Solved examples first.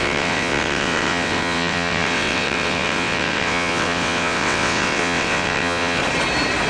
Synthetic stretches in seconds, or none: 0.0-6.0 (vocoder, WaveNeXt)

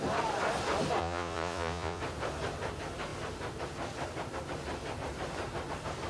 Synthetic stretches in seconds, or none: 1.0-2.0 (vocoder, Vocos)